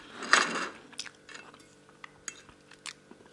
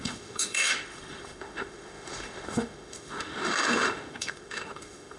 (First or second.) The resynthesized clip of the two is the second